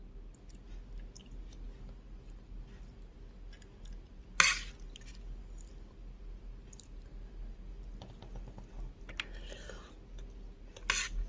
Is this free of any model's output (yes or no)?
yes